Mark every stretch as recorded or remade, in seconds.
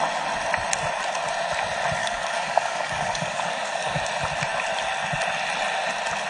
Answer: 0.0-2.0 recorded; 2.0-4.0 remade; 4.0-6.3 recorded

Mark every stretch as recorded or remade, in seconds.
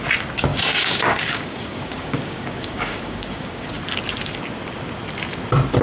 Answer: 0.0-0.5 recorded; 0.5-3.8 remade; 3.8-5.8 recorded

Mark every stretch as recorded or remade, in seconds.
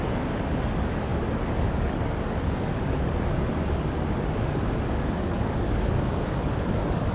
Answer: 0.0-7.1 remade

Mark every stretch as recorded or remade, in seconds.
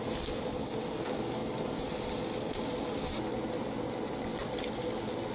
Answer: 0.0-5.3 recorded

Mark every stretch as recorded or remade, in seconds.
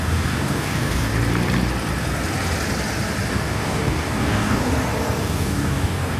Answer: 0.0-1.1 remade; 1.1-3.3 recorded; 3.3-4.7 remade; 4.7-5.2 recorded; 5.2-6.2 remade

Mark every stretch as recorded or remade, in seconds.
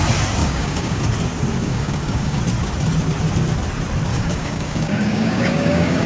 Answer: 0.0-0.4 recorded; 0.4-1.0 remade; 1.0-1.6 recorded; 1.6-2.4 remade; 2.4-4.1 recorded; 4.1-6.1 remade